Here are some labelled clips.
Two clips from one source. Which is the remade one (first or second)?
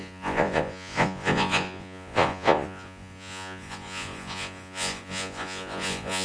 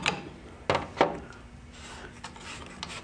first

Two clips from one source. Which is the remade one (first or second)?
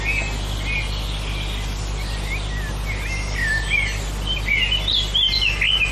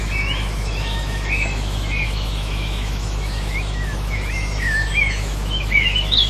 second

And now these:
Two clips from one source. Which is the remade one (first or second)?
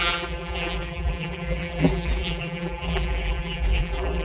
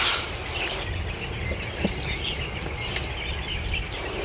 first